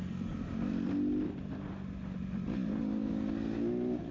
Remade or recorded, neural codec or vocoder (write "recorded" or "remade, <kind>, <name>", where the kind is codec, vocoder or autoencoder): recorded